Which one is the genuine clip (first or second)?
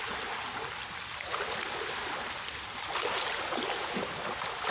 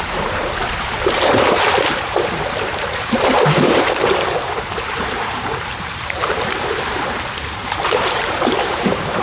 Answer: first